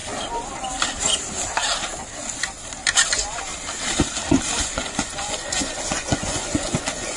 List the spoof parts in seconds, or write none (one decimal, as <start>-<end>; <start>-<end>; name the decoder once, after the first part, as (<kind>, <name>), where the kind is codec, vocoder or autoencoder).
3.1-3.5 (vocoder, Vocos); 4.6-7.2